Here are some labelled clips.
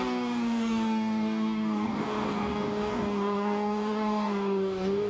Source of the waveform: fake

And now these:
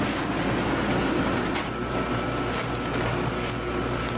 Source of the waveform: real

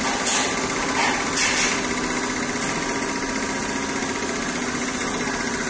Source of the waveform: real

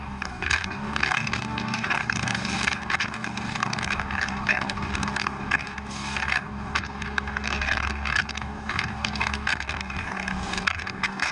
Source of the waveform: fake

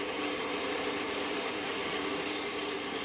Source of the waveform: fake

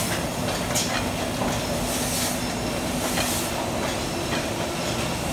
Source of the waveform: real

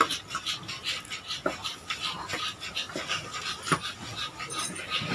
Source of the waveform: real